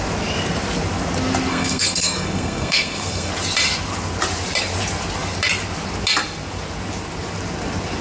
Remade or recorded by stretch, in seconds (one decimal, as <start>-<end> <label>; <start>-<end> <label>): 0.0-1.5 recorded; 1.5-3.3 remade; 3.3-8.0 recorded